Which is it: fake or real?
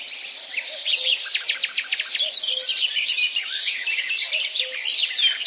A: real